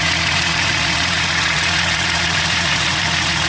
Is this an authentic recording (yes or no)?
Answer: no